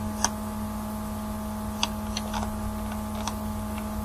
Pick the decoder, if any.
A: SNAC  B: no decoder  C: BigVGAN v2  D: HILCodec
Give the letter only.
B